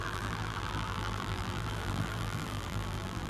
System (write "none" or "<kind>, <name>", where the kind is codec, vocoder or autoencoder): vocoder, BigVGAN v2